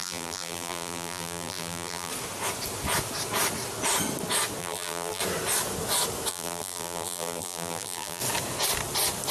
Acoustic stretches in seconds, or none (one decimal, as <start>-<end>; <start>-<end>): 2.1-4.6; 5.2-6.3; 8.2-9.3